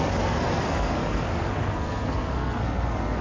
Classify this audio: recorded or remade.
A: remade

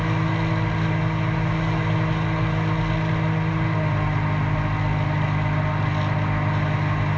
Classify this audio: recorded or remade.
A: recorded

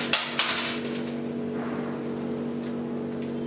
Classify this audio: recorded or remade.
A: recorded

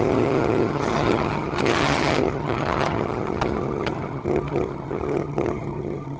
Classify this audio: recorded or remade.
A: remade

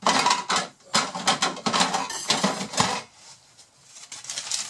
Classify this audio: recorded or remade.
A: recorded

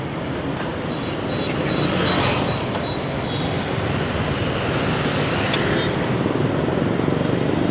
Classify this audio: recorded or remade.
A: recorded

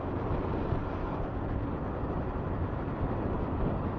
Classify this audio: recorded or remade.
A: recorded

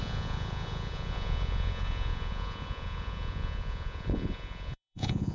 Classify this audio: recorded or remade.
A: remade